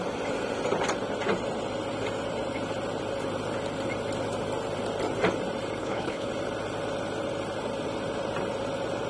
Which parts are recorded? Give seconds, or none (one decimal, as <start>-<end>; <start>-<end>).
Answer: 0.0-5.8; 6.3-9.1